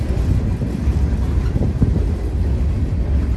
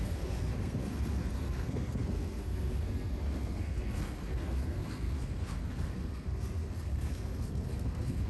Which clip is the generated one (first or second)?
second